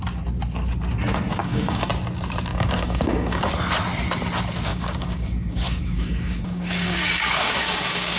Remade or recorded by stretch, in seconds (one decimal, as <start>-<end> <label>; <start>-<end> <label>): 0.0-1.4 recorded; 1.4-1.9 remade; 1.9-2.5 recorded; 2.5-3.5 remade; 3.5-4.7 recorded; 4.7-8.2 remade